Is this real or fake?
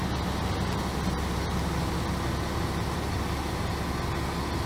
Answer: real